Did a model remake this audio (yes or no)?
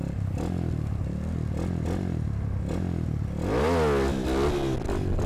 no